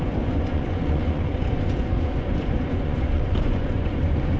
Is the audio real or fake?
fake